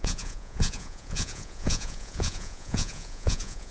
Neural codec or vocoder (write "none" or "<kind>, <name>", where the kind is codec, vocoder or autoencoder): vocoder, Vocos